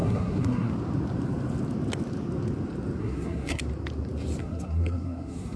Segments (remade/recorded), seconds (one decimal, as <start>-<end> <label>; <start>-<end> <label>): 0.0-0.7 remade; 0.7-3.0 recorded; 3.0-3.6 remade; 3.6-4.4 recorded; 4.4-5.6 remade